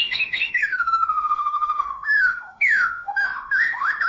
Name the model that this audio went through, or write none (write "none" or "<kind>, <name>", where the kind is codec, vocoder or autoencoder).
autoencoder, DAC-VAE